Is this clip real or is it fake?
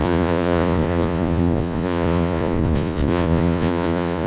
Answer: fake